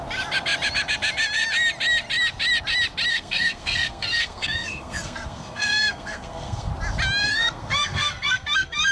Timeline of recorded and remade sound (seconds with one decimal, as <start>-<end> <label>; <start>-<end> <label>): 0.0-3.1 recorded; 3.1-6.7 remade; 6.7-7.2 recorded; 7.2-8.9 remade